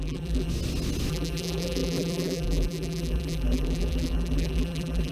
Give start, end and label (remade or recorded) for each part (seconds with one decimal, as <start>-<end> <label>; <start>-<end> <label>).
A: 0.0-0.5 remade; 0.5-1.1 recorded; 1.1-5.1 remade